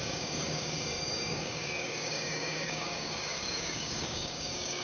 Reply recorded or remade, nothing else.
remade